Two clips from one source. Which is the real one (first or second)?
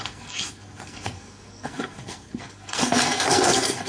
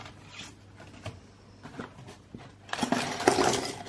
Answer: second